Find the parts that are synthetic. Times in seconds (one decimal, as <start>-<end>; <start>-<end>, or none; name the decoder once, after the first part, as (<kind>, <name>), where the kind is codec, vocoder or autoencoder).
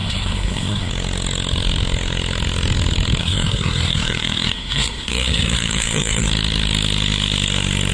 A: 0.0-0.9 (codec, SNAC); 3.2-6.3